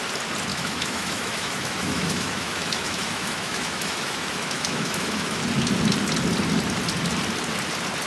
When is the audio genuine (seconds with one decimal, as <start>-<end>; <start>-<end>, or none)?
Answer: 0.0-0.5; 5.4-8.1